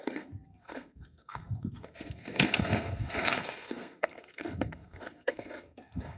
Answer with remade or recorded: remade